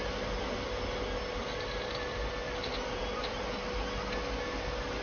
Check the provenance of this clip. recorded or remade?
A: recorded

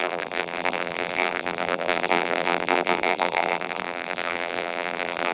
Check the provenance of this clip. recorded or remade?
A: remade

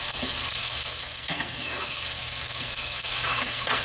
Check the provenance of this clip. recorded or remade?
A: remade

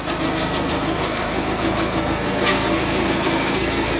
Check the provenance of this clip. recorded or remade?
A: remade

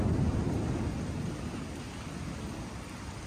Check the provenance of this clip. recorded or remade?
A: recorded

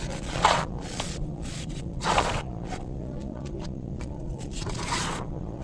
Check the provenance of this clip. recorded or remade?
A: remade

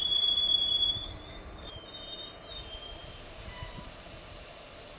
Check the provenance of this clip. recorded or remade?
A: remade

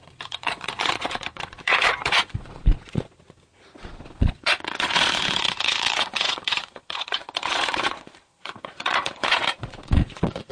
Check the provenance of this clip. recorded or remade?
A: remade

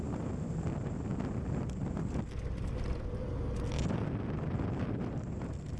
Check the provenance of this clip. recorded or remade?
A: recorded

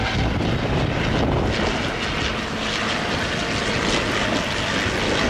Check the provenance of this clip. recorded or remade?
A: recorded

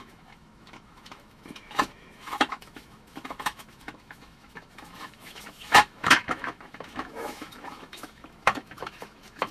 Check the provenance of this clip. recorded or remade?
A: remade